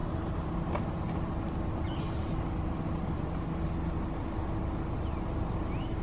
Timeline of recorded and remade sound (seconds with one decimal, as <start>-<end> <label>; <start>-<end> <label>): 0.0-6.0 recorded

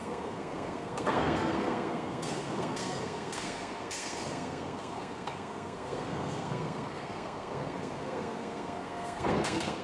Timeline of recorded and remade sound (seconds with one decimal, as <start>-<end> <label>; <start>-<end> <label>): 0.0-9.8 remade